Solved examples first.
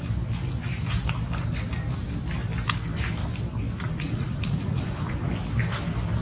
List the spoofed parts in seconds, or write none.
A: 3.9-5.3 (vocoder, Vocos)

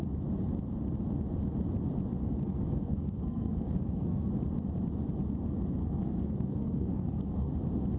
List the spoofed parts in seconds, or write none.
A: 2.2-4.3 (codec, SNAC); 5.8-7.5

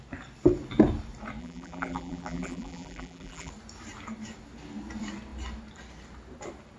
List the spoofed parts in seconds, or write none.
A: 1.4-3.5 (vocoder, BigVGAN v2)

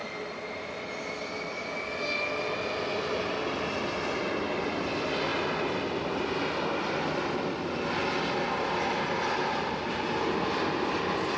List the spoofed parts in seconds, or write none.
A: none

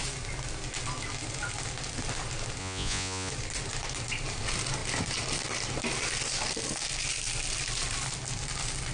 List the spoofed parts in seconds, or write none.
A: 2.6-3.3 (vocoder, Vocos)

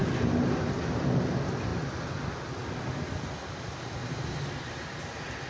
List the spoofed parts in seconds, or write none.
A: none